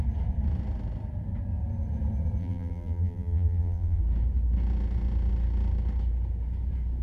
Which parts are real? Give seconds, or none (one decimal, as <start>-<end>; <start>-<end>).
0.0-2.4; 4.0-7.0